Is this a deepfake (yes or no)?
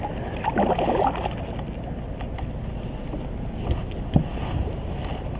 no